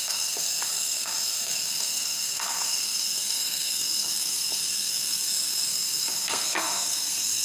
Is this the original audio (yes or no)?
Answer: no